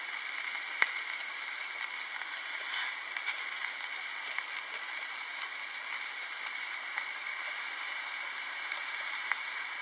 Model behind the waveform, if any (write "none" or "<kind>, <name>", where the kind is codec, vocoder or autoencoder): none